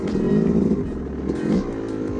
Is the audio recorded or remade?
recorded